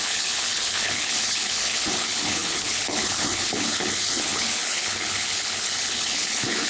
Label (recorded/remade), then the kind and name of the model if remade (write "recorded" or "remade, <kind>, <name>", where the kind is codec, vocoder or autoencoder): remade, codec, HILCodec